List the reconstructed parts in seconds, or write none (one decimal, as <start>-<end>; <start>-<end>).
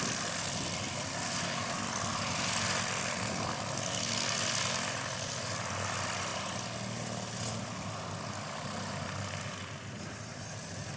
none